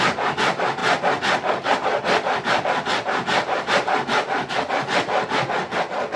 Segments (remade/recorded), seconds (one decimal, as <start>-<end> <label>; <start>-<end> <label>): 0.0-6.2 recorded